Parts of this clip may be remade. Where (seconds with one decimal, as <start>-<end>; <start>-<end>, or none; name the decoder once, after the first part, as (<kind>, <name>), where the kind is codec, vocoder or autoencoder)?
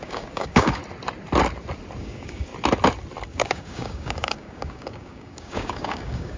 0.0-0.8 (codec, DAC); 2.0-2.5; 3.3-6.4